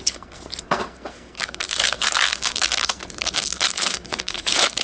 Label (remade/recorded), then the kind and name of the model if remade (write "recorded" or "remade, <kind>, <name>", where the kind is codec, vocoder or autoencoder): remade, codec, SNAC